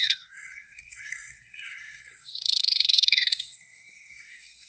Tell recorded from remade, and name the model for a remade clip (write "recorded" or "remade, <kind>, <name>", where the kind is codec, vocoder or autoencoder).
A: remade, codec, SNAC